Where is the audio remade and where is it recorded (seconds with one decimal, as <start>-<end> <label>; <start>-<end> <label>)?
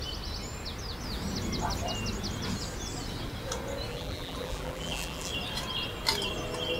0.0-3.9 recorded; 3.9-5.3 remade; 5.3-6.8 recorded